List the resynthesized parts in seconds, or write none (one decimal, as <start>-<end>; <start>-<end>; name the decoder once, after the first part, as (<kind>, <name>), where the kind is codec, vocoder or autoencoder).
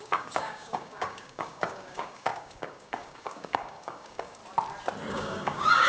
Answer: 0.0-4.4 (codec, DAC); 5.1-5.9